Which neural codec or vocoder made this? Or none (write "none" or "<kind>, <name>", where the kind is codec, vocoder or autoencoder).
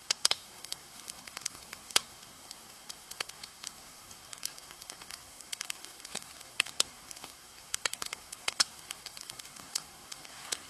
codec, SNAC